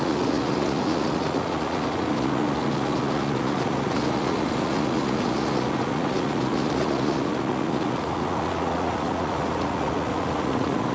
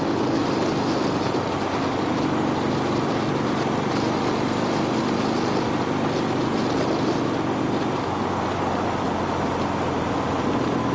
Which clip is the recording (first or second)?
second